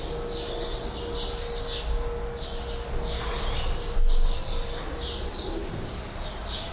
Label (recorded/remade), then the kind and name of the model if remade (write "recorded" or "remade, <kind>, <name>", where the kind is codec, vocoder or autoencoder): recorded